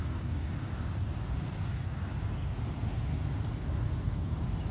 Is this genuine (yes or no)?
yes